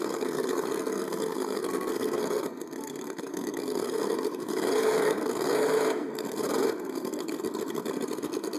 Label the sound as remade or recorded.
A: remade